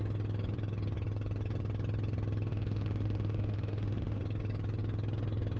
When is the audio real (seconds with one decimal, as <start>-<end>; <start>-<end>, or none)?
0.0-2.5; 4.2-5.6